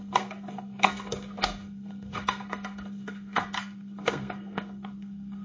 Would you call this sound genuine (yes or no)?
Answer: no